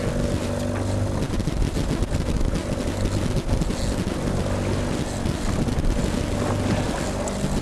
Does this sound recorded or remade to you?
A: recorded